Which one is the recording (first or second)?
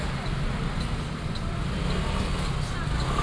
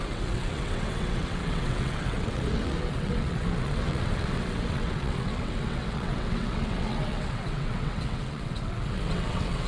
first